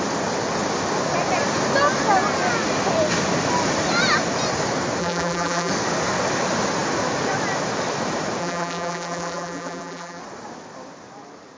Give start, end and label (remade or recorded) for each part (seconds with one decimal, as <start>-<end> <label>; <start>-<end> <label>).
0.0-5.0 recorded; 5.0-5.7 remade; 5.7-8.4 recorded; 8.4-10.2 remade; 10.2-11.6 recorded